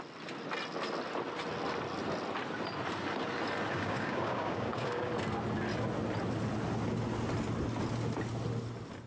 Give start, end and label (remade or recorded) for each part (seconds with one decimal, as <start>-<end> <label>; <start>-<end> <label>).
0.0-3.7 recorded; 3.7-5.1 remade; 5.1-9.1 recorded